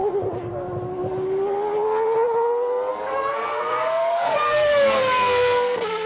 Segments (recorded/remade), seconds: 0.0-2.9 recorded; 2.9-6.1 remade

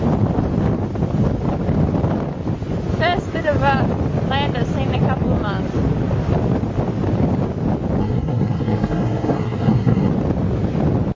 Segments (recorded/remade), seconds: 0.0-8.0 recorded; 8.0-10.1 remade; 10.1-11.1 recorded

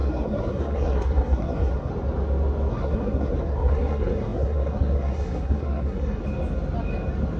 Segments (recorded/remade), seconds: 0.0-1.9 remade; 1.9-2.7 recorded; 2.7-6.2 remade; 6.2-7.4 recorded

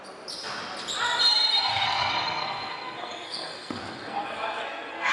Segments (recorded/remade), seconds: 0.0-1.7 recorded; 1.7-5.1 remade

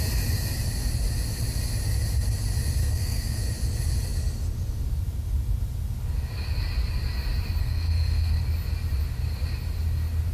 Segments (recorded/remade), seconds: 0.0-2.8 recorded; 2.8-3.5 remade; 3.5-7.6 recorded; 7.6-8.3 remade; 8.3-10.3 recorded

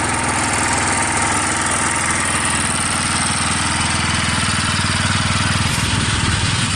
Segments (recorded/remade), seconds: 0.0-5.7 recorded; 5.7-6.8 remade

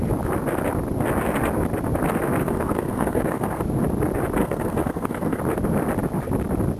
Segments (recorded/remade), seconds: 0.0-2.4 recorded; 2.4-3.6 remade; 3.6-4.4 recorded; 4.4-5.4 remade; 5.4-6.8 recorded

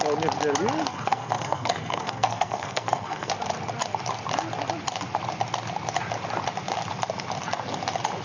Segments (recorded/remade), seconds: 0.0-0.8 recorded; 0.8-3.3 remade; 3.3-8.2 recorded